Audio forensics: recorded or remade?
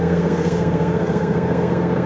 remade